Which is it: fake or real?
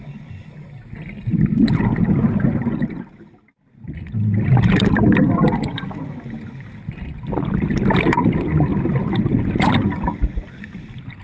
real